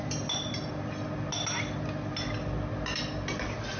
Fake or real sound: real